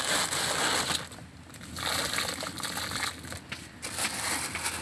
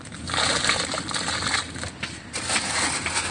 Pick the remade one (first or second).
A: second